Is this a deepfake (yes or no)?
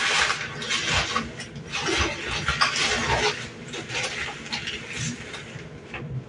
no